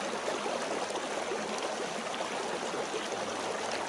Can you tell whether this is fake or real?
real